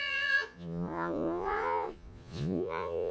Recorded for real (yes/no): no